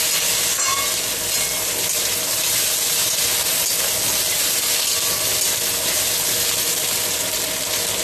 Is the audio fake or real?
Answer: real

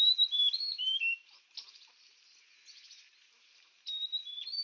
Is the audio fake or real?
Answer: real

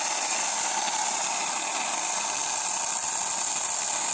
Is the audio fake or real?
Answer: real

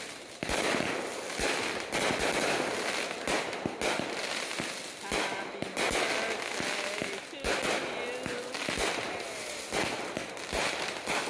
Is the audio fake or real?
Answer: real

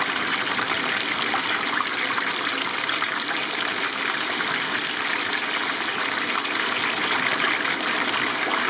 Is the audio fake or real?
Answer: fake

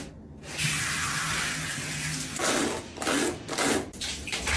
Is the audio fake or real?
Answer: real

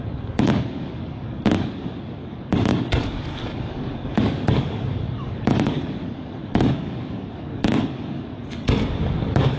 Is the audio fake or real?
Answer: fake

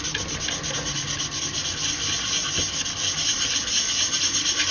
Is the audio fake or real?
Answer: real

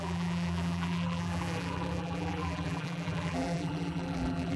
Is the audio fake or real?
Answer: fake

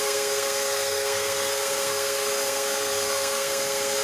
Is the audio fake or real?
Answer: fake